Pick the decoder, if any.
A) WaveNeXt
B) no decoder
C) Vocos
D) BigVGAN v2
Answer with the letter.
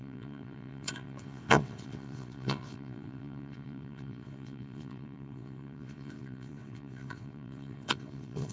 A